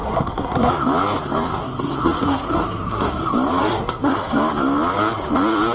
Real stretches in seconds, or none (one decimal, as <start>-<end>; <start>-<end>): 0.7-1.6; 3.2-3.6; 4.3-5.7